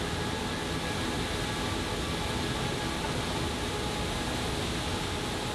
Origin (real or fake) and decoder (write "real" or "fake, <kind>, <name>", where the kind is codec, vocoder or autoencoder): real